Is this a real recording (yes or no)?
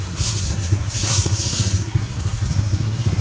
no